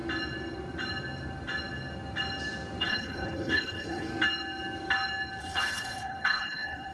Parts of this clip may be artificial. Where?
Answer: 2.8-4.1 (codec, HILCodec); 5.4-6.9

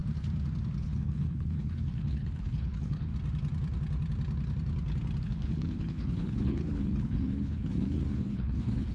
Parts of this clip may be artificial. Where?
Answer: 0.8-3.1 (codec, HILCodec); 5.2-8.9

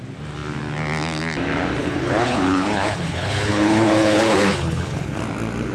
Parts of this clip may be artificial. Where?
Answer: 1.8-5.2 (codec, HILCodec)

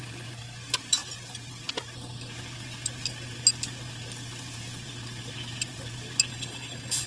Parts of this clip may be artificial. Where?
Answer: 6.3-7.1 (codec, HILCodec)

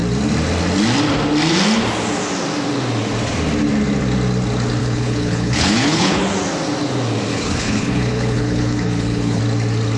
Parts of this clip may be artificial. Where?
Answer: 4.8-6.2 (codec, HILCodec); 7.3-9.4

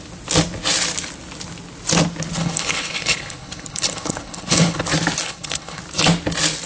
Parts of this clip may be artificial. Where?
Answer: 2.4-4.8 (codec, HILCodec); 5.2-5.8